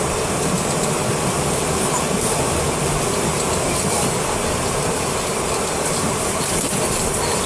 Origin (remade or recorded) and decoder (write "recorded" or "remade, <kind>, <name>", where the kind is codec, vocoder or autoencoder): remade, vocoder, BigVGAN v2